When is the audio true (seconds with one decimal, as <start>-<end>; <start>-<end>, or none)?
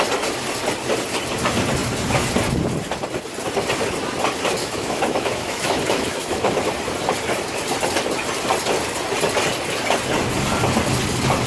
0.0-4.6; 6.7-11.5